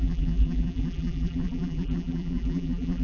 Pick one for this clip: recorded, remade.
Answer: remade